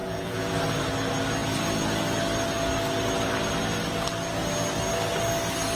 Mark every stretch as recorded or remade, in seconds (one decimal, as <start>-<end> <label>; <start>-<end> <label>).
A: 0.0-0.6 remade; 0.6-5.7 recorded